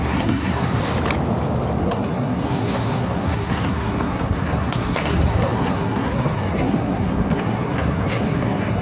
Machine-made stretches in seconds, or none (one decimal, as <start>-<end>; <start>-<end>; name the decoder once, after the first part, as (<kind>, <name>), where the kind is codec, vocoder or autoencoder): 0.0-0.8 (codec, SNAC); 1.8-8.8